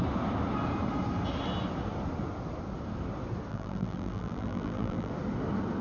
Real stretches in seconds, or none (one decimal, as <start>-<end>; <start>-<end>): 0.0-3.5; 5.1-5.8